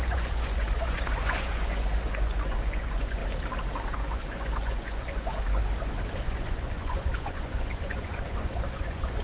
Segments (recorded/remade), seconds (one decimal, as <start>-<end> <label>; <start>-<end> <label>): 0.0-3.2 remade; 3.2-3.9 recorded; 3.9-5.6 remade; 5.6-6.2 recorded; 6.2-9.2 remade